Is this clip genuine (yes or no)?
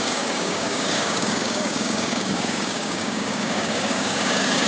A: no